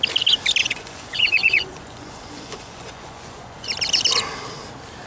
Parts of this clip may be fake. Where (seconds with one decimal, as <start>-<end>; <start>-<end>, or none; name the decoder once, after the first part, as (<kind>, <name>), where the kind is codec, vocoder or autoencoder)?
0.6-3.7 (vocoder, Vocos)